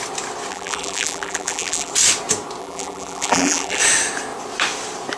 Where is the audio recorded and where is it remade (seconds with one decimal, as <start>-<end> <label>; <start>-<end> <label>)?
0.0-0.5 recorded; 0.5-1.9 remade; 1.9-2.6 recorded; 2.6-3.8 remade; 3.8-5.2 recorded